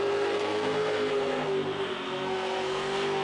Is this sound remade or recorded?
remade